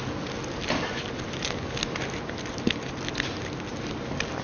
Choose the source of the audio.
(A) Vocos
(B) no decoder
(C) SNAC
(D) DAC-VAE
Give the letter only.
B